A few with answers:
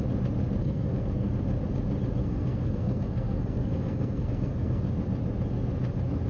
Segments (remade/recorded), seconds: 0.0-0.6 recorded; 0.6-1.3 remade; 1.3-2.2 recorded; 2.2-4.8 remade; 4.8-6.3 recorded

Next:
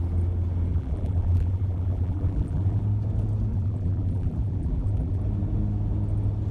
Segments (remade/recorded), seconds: 0.0-0.7 recorded; 0.7-2.8 remade; 2.8-3.5 recorded; 3.5-5.2 remade; 5.2-6.5 recorded

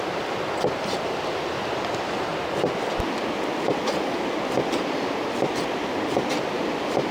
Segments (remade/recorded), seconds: 0.0-7.1 recorded

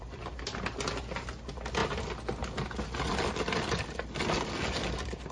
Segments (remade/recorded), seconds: 0.0-5.3 recorded

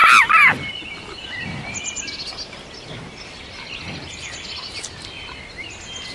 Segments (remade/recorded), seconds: 0.0-6.1 recorded

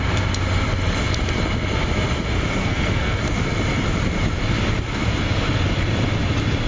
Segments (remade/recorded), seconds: 0.0-2.6 recorded; 2.6-3.2 remade; 3.2-6.7 recorded

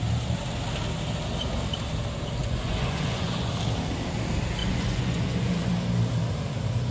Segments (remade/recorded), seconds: 0.0-2.4 recorded; 2.4-3.5 remade; 3.5-4.6 recorded; 4.6-5.7 remade; 5.7-6.9 recorded